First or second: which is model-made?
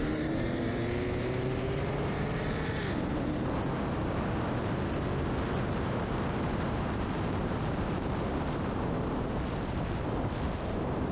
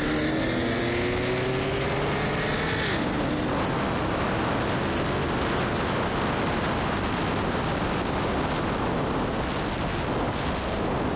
first